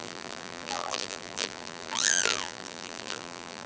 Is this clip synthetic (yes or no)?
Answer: yes